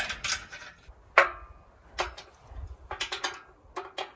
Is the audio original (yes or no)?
yes